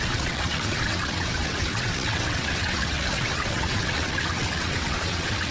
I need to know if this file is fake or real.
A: fake